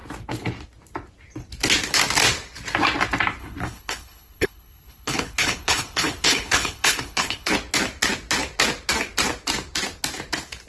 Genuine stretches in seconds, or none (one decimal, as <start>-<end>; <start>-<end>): 0.0-3.4; 7.5-10.7